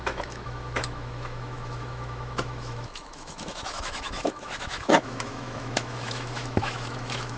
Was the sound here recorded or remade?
remade